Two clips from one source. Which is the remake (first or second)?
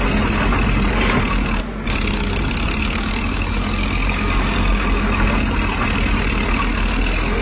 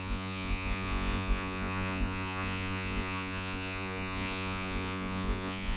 second